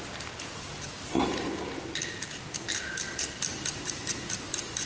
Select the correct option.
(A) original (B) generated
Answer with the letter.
A